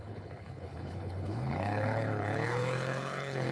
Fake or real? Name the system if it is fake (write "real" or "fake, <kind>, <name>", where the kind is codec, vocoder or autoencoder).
fake, codec, HILCodec